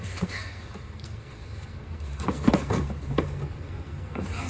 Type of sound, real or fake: fake